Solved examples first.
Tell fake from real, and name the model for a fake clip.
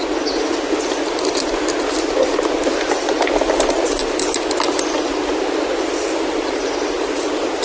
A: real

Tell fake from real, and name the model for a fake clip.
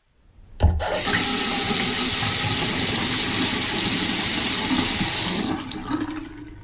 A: real